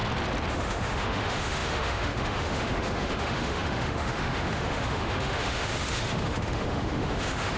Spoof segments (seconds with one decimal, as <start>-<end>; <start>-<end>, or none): 0.5-7.6